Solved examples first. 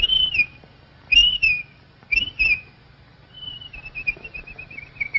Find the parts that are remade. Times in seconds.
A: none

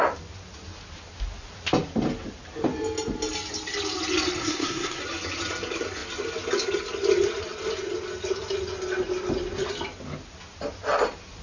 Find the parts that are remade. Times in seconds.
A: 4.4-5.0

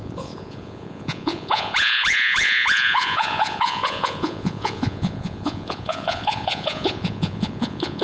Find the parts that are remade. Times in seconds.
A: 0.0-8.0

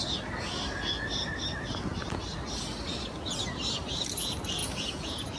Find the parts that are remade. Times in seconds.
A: 4.6-5.4

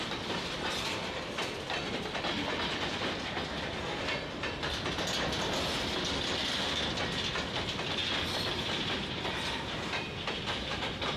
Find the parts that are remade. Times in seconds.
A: none

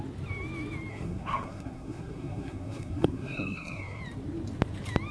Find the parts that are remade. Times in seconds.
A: 0.9-4.0

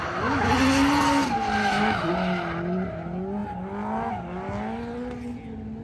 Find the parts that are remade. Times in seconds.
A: 1.6-2.1

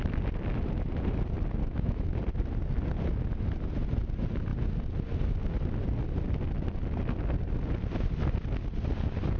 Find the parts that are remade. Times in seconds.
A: 1.6-2.1